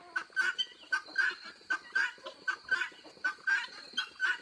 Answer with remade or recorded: recorded